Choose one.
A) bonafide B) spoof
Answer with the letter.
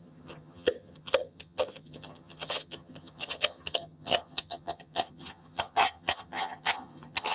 B